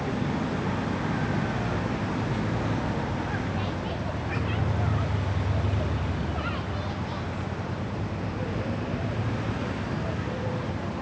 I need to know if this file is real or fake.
real